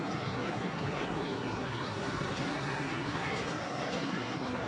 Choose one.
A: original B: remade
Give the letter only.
B